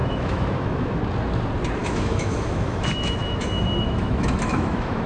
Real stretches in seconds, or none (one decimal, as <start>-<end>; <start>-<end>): 1.0-1.8